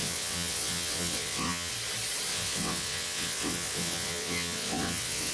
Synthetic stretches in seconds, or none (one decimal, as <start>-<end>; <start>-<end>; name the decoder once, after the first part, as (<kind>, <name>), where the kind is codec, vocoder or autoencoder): 0.0-1.7 (vocoder, WaveNeXt); 2.3-5.3